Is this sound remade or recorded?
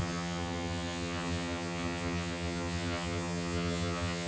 remade